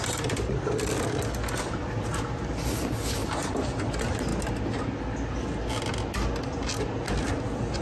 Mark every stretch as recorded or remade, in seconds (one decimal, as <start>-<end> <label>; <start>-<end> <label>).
0.0-3.2 recorded; 3.2-3.9 remade; 3.9-7.8 recorded